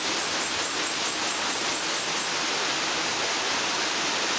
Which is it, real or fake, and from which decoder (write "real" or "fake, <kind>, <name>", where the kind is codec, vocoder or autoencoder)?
real